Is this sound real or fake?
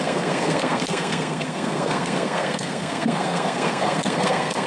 fake